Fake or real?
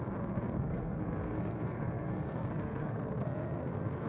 fake